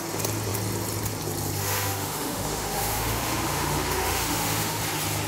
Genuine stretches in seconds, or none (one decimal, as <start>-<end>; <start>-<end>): 0.0-1.6; 4.8-5.3